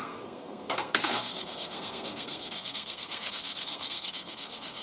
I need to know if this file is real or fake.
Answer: fake